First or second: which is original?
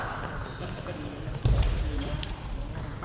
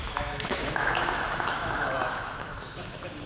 first